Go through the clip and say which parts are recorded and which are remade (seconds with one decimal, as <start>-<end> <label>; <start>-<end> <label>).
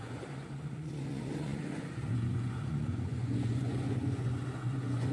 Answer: 0.0-5.1 remade